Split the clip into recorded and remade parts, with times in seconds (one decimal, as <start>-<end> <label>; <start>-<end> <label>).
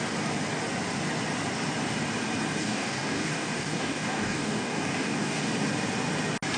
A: 0.0-2.6 recorded; 2.6-5.5 remade; 5.5-6.6 recorded